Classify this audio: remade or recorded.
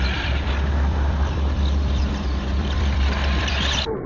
remade